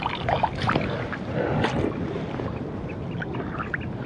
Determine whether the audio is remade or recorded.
recorded